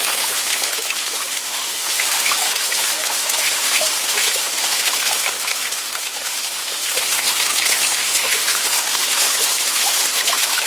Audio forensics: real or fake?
fake